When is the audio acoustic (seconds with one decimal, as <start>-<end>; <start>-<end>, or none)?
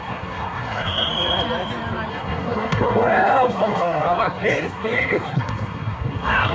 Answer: 1.1-2.1